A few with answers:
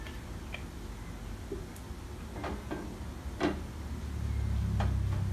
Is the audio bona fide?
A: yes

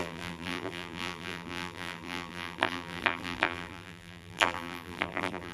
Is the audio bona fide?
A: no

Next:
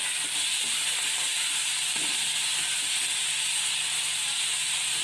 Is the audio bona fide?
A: yes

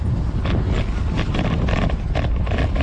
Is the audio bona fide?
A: yes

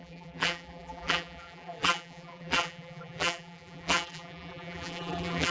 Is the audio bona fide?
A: no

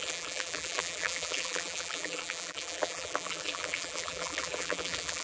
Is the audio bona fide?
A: no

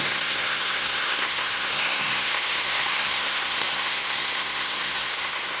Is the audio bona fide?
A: no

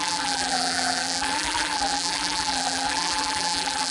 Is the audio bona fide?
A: no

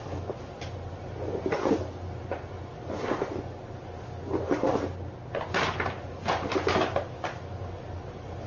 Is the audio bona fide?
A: yes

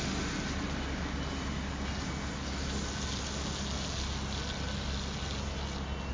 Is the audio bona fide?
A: yes